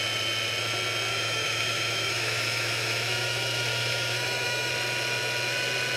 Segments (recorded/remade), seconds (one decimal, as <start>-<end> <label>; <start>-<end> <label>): 0.0-1.1 recorded; 1.1-4.7 remade; 4.7-6.0 recorded